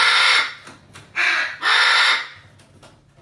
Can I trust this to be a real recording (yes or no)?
yes